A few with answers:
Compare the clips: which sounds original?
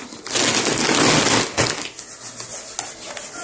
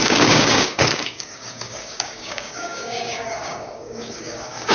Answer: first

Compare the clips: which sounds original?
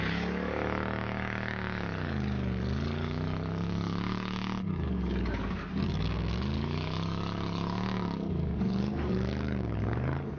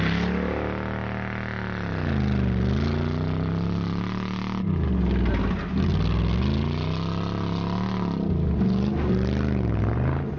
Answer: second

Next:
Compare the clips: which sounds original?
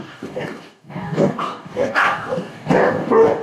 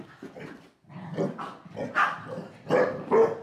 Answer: second